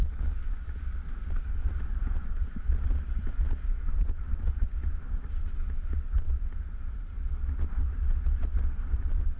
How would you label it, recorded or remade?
recorded